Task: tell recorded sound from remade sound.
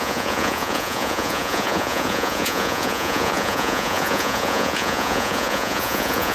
remade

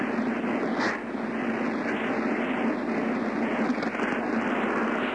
recorded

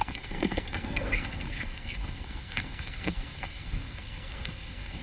remade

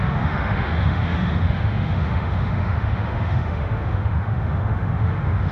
remade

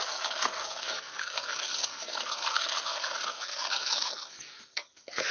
remade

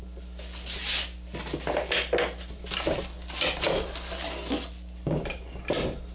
recorded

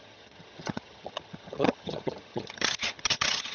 remade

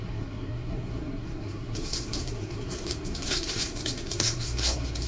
remade